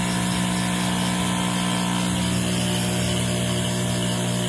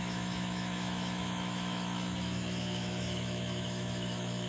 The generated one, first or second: second